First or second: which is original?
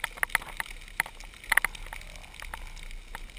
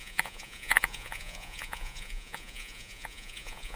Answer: first